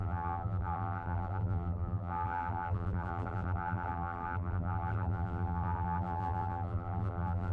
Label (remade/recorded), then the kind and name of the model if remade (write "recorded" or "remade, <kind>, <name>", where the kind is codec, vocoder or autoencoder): remade, vocoder, BigVGAN v2